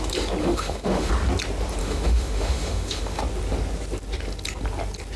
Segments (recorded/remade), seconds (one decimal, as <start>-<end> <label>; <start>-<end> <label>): 0.0-0.4 recorded; 0.4-1.1 remade; 1.1-1.8 recorded; 1.8-3.2 remade; 3.2-5.2 recorded